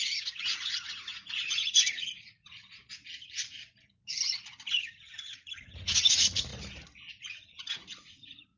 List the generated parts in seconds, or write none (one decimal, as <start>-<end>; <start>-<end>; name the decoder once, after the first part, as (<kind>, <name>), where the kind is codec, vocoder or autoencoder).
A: 0.0-2.8 (vocoder, Vocos); 4.7-6.5; 7.1-8.6